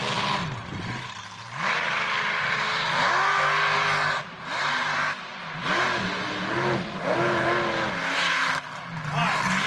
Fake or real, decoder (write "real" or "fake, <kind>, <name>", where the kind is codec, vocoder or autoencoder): real